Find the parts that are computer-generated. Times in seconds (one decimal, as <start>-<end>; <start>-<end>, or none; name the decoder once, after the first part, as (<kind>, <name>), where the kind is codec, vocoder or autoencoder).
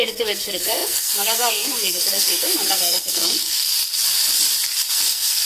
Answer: 0.0-3.7 (codec, SNAC); 4.9-5.4